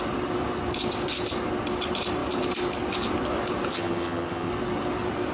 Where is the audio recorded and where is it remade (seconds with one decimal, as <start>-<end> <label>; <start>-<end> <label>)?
0.0-3.7 recorded; 3.7-4.5 remade; 4.5-5.3 recorded